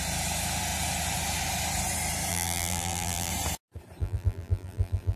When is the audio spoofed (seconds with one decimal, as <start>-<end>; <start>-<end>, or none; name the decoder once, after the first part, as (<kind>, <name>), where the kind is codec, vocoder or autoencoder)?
2.3-3.3 (vocoder, BigVGAN v2); 4.0-5.2